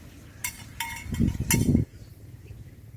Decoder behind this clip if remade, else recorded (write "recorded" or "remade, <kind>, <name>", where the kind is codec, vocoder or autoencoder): recorded